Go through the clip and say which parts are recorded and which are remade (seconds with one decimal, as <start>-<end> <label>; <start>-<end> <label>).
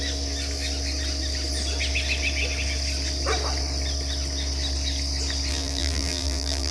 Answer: 0.0-5.5 recorded; 5.5-6.7 remade